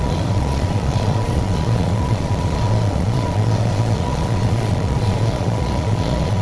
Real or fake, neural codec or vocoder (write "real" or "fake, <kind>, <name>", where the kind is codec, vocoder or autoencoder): fake, vocoder, Vocos